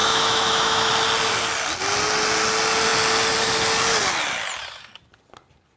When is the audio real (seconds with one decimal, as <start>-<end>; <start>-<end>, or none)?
0.9-5.8